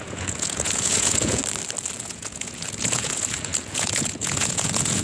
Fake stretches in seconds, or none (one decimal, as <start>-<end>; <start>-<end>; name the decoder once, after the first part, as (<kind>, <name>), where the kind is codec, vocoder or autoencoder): 0.0-1.4 (vocoder, Vocos); 2.0-5.0